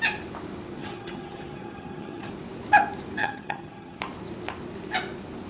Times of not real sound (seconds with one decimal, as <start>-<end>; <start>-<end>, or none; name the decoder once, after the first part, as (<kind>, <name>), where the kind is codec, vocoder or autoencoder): 0.8-2.3 (vocoder, HiFi-GAN); 3.2-4.0